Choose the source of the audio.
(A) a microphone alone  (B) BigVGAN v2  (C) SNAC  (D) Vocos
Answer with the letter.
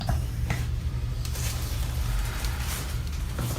B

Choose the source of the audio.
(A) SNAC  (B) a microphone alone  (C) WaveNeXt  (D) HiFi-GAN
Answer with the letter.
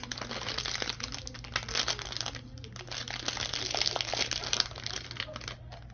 B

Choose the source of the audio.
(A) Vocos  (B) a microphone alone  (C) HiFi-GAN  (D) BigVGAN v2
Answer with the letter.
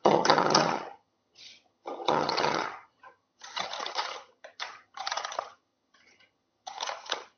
C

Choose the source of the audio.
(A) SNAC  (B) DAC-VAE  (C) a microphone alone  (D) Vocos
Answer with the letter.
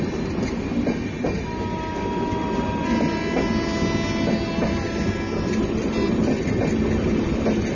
C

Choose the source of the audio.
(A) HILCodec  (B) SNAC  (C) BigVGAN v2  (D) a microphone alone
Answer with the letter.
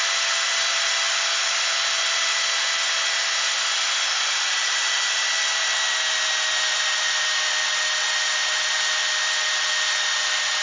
D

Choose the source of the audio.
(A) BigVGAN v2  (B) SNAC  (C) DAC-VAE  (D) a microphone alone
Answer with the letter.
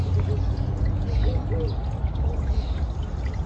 D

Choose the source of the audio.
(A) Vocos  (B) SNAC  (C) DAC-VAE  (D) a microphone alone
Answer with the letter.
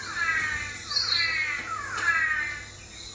D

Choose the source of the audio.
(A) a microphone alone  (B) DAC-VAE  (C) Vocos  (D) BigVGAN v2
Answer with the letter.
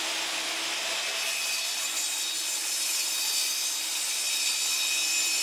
A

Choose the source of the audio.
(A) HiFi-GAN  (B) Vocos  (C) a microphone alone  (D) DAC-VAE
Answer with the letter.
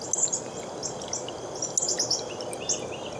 C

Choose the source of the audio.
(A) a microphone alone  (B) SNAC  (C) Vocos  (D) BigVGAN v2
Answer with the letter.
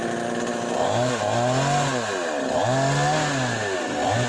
A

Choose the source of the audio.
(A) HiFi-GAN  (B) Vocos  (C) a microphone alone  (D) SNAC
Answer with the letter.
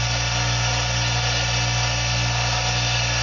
C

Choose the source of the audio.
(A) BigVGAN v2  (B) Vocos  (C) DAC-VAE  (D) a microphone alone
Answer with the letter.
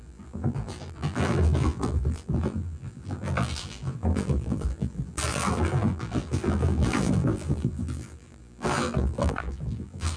A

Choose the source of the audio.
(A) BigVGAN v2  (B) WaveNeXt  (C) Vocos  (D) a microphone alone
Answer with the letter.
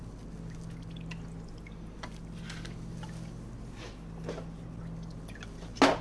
D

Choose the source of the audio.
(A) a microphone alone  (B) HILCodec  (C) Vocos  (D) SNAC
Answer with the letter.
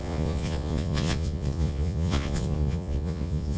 C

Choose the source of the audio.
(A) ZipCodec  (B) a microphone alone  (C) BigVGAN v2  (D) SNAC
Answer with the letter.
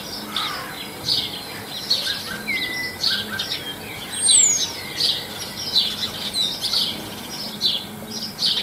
B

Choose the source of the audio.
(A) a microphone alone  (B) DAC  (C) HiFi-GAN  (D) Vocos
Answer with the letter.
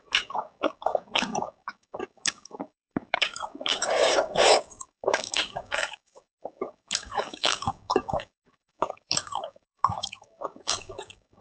B